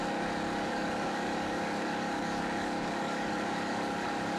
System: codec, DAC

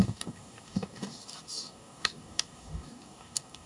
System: codec, DAC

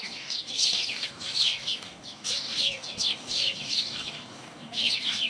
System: codec, DAC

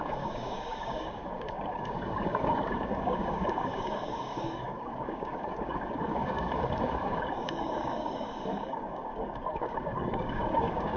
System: codec, DAC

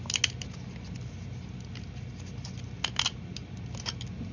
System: none